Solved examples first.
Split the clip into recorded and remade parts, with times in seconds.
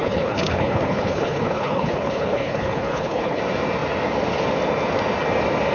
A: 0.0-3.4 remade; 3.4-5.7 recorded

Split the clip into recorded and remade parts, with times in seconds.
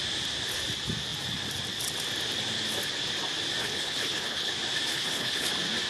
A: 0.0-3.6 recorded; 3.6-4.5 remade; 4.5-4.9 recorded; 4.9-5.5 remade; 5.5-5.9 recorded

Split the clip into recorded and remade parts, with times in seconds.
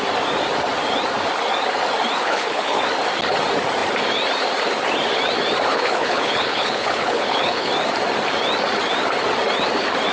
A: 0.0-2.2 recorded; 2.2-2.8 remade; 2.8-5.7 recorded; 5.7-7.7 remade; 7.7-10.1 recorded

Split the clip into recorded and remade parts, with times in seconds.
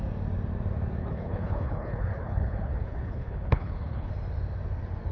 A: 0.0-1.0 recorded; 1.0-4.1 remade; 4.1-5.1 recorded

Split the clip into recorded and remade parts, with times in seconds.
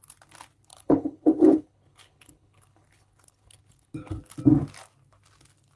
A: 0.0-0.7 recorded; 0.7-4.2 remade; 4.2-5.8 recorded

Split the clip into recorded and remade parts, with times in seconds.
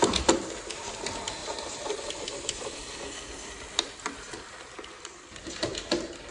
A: 0.0-6.3 recorded